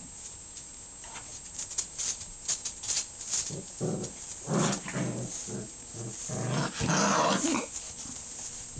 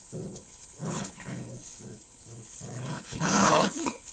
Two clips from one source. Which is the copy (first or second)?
second